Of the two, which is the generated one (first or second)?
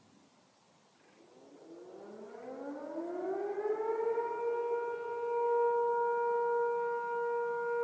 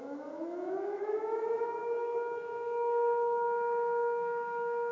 second